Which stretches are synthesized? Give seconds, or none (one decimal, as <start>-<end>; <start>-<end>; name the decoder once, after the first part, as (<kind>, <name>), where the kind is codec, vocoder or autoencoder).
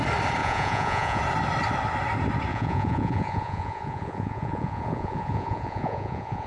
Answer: 0.4-1.2 (vocoder, Vocos); 2.5-6.5